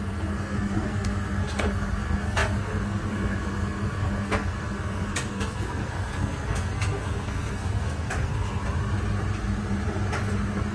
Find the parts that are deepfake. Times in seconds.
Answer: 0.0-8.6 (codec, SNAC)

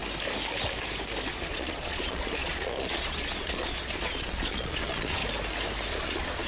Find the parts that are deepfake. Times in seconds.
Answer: 1.3-5.2 (vocoder, Vocos); 5.9-6.5

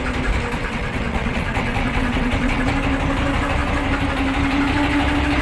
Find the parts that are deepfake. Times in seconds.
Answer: 0.6-2.7 (vocoder, WaveNeXt)